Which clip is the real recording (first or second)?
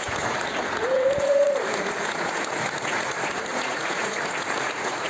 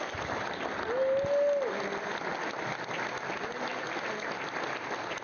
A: second